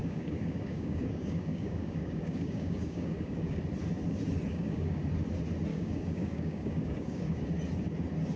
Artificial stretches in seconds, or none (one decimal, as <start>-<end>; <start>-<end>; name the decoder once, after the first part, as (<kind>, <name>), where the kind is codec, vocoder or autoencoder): 0.0-3.6 (codec, DAC); 4.5-5.0; 5.7-7.4